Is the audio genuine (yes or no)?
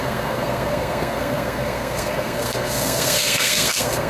no